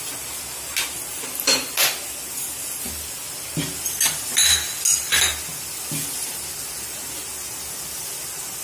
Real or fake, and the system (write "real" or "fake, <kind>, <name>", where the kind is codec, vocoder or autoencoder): real